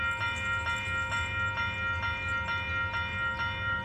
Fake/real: real